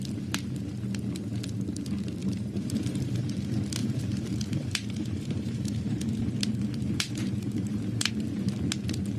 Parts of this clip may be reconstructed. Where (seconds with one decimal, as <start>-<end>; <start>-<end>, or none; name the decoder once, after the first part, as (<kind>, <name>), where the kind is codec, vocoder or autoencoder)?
2.2-3.3 (vocoder, BigVGAN v2); 3.8-8.1